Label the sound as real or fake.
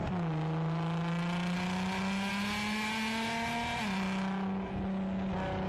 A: real